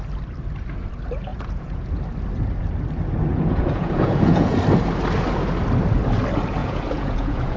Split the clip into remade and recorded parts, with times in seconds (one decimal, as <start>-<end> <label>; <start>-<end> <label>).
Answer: 0.0-1.3 recorded; 1.3-1.9 remade; 1.9-3.3 recorded; 3.3-4.6 remade; 4.6-6.6 recorded; 6.6-7.6 remade